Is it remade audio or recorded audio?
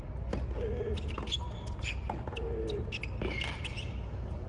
recorded